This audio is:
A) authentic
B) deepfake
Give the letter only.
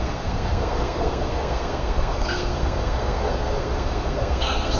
B